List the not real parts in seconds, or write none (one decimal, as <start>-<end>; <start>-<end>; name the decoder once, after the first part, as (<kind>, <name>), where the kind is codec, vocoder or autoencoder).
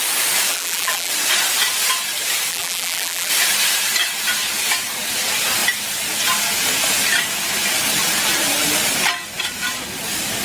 0.5-1.1 (vocoder, BigVGAN v2); 2.5-3.3